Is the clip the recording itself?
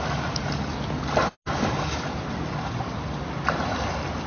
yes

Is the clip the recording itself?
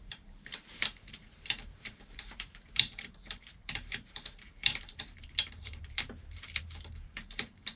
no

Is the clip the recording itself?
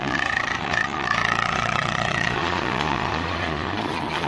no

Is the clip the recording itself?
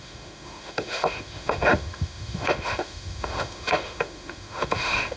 no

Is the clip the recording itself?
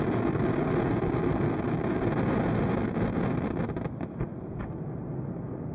yes